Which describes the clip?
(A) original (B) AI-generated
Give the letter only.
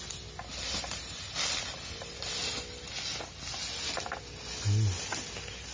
A